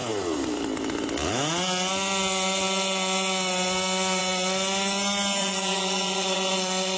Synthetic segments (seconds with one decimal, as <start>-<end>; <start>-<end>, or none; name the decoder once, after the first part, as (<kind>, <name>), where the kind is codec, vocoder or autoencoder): 5.4-7.0 (vocoder, Vocos)